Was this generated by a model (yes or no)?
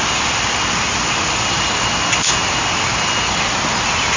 no